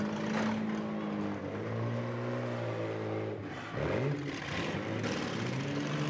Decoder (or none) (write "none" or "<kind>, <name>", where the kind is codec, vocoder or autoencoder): none